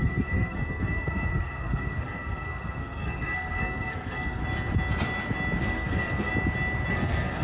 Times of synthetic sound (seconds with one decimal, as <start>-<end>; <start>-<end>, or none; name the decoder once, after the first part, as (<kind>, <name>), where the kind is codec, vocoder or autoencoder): 0.0-4.4 (codec, SNAC); 5.6-6.3; 6.9-7.4